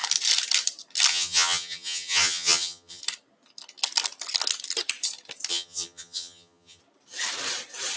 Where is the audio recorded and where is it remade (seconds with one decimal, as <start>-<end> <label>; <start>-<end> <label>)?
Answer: 0.0-1.1 recorded; 1.1-3.0 remade; 3.0-5.5 recorded; 5.5-6.8 remade; 6.8-8.0 recorded